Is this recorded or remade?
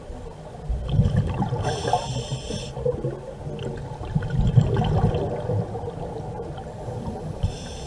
recorded